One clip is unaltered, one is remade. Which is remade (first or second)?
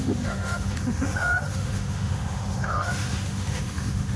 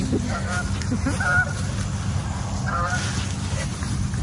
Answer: first